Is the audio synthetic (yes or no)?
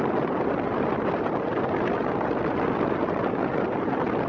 no